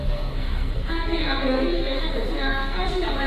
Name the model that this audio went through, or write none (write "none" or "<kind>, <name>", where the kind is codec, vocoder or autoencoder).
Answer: codec, SNAC